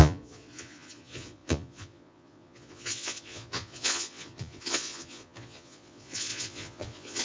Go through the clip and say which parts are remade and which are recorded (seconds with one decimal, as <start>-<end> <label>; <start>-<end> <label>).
0.0-7.2 remade